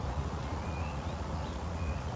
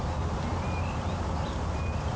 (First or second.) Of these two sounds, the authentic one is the second